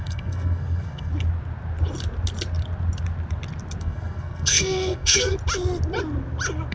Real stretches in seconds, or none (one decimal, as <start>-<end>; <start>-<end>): 1.1-3.8; 5.3-6.7